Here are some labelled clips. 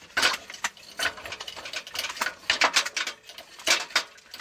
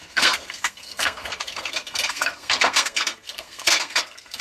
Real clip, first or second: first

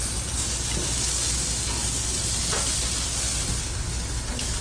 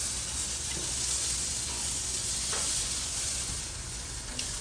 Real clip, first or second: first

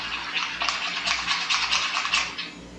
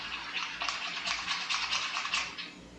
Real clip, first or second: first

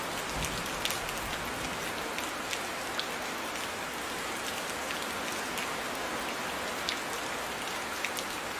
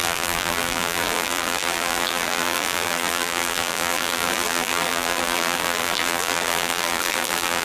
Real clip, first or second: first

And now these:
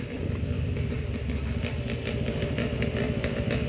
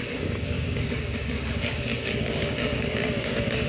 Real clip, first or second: first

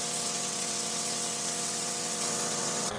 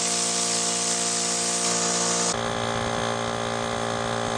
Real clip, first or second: second